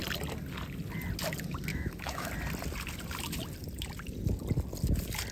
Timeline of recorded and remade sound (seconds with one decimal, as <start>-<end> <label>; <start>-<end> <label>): 0.0-1.7 recorded; 1.7-2.3 remade; 2.3-5.3 recorded